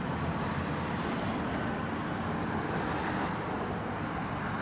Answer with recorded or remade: recorded